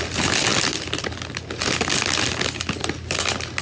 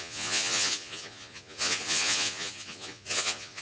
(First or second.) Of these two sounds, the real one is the first